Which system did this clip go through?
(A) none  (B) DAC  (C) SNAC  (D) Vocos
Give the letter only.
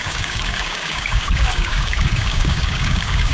B